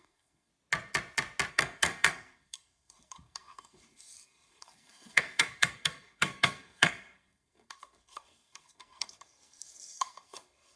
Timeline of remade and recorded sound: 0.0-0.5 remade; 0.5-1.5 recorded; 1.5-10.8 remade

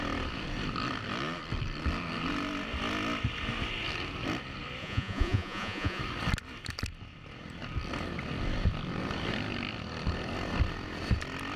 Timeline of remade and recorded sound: 0.0-4.8 recorded; 4.8-6.0 remade; 6.0-11.6 recorded

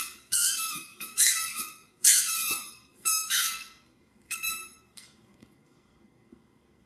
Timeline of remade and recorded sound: 0.0-6.9 remade

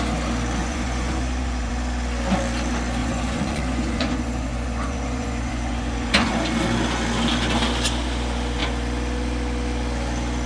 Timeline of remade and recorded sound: 0.0-0.6 recorded; 0.6-1.7 remade; 1.7-3.0 recorded; 3.0-6.3 remade; 6.3-10.5 recorded

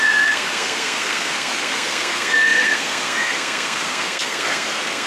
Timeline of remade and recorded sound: 0.0-5.1 remade